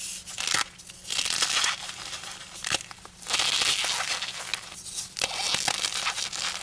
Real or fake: real